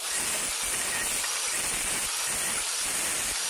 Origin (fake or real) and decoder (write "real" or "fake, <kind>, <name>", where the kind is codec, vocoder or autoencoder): real